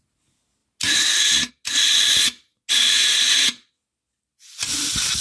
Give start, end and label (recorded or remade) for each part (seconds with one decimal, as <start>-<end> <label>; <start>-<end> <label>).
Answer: 0.0-5.2 recorded